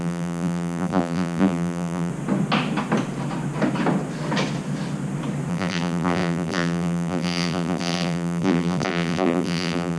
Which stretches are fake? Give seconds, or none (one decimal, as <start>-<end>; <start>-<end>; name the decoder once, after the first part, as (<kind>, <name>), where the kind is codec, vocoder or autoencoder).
0.0-2.1 (vocoder, BigVGAN v2); 5.5-10.0